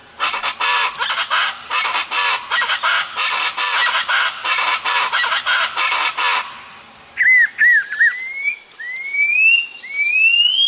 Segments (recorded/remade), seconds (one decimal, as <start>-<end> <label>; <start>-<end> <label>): 0.0-0.9 remade; 0.9-10.7 recorded